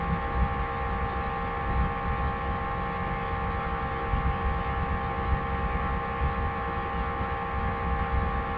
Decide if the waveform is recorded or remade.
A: recorded